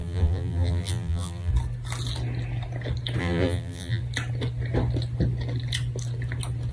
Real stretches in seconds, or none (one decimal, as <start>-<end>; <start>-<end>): 1.5-3.2; 4.0-6.7